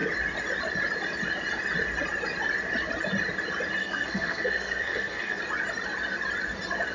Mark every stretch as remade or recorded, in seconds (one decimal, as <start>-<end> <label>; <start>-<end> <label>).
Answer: 0.0-3.8 recorded; 3.8-5.4 remade; 5.4-6.9 recorded

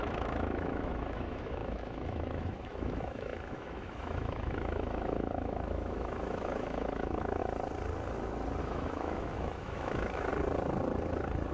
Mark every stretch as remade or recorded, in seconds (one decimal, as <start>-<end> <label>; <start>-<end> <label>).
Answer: 0.0-7.4 remade; 7.4-8.6 recorded; 8.6-10.3 remade; 10.3-11.5 recorded

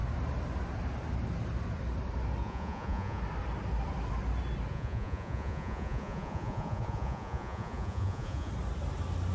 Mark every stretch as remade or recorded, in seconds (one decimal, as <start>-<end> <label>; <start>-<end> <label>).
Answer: 0.0-2.4 recorded; 2.4-3.2 remade; 3.2-4.7 recorded; 4.7-8.5 remade; 8.5-9.3 recorded

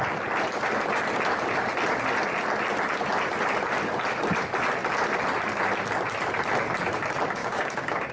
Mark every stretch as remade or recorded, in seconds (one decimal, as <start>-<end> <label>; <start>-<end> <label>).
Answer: 0.0-7.4 recorded; 7.4-8.1 remade

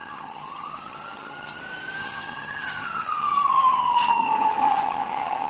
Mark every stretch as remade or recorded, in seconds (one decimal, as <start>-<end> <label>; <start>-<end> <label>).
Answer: 0.0-1.6 remade; 1.6-2.0 recorded; 2.0-5.5 remade